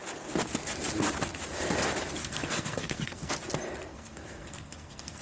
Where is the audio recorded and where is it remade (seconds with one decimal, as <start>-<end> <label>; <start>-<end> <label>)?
0.0-2.2 recorded; 2.2-3.3 remade; 3.3-3.9 recorded; 3.9-5.2 remade